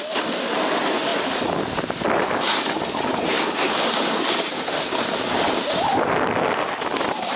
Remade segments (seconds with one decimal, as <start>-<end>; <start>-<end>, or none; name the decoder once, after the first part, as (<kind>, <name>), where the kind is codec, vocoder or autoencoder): none